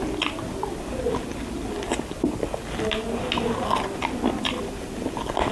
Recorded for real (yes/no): yes